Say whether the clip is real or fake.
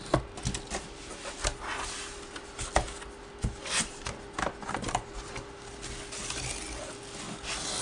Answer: real